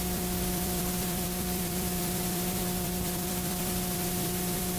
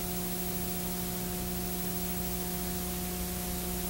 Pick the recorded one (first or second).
second